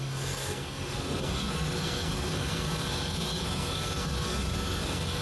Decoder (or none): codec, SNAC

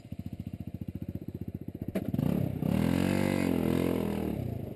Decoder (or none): none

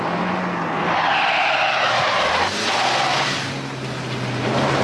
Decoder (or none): none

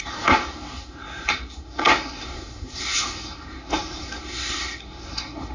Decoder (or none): codec, SNAC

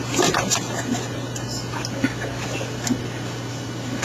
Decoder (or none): none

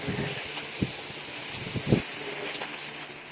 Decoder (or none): none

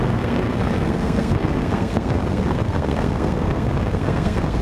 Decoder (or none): codec, SNAC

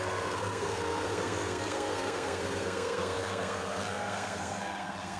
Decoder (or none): codec, SNAC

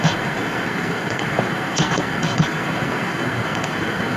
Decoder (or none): codec, SNAC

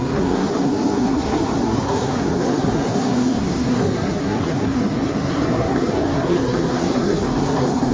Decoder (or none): codec, SNAC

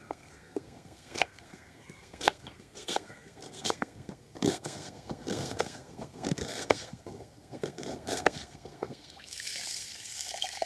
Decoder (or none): codec, SNAC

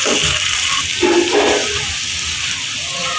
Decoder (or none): none